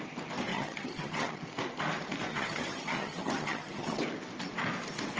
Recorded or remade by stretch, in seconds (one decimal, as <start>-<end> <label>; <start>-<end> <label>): 0.0-0.5 recorded; 0.5-1.4 remade; 1.4-2.3 recorded; 2.3-4.0 remade; 4.0-5.2 recorded